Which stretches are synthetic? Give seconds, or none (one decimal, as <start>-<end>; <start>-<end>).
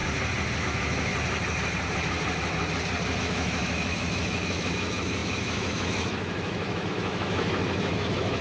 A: 0.6-1.1; 3.2-8.4